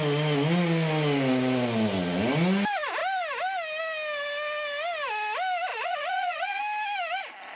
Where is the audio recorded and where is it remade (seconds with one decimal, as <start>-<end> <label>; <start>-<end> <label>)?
0.0-5.7 recorded; 5.7-6.6 remade; 6.6-7.6 recorded